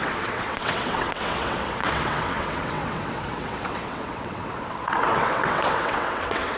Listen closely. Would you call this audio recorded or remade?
remade